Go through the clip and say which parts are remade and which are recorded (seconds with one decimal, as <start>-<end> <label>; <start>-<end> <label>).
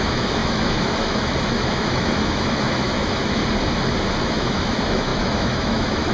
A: 0.0-3.4 remade; 3.4-4.2 recorded; 4.2-6.1 remade